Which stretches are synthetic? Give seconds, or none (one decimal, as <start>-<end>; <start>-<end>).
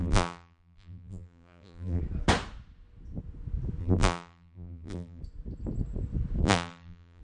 0.0-2.0; 3.8-5.2; 6.4-7.2